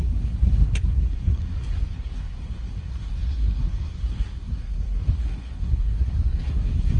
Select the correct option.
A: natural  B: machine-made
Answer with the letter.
B